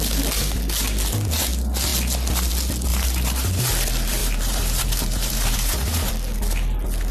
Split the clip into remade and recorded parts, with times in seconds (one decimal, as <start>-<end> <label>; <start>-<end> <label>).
0.0-2.9 recorded; 2.9-3.6 remade; 3.6-4.2 recorded; 4.2-6.1 remade; 6.1-7.1 recorded